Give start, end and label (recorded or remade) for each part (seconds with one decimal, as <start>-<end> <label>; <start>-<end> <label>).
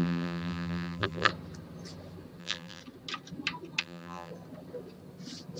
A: 0.0-1.3 remade; 1.3-2.4 recorded; 2.4-2.8 remade; 2.8-3.8 recorded; 3.8-4.3 remade; 4.3-5.6 recorded